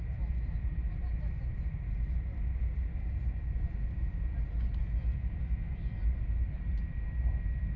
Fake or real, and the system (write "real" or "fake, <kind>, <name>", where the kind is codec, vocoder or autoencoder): real